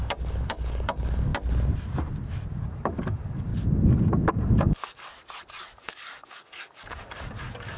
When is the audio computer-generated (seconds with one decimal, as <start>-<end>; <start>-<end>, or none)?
0.0-1.3; 2.7-3.5; 4.3-5.1; 5.8-7.8